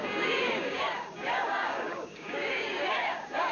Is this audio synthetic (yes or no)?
yes